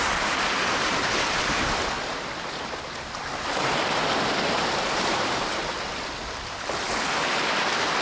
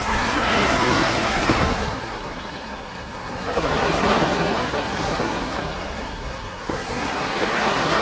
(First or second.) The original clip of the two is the first